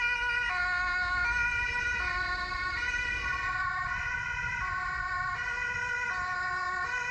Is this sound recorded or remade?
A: recorded